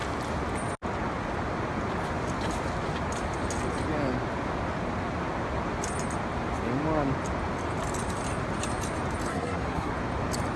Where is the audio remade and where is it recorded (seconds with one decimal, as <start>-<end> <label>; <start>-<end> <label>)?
0.0-9.3 recorded; 9.3-9.9 remade; 9.9-10.6 recorded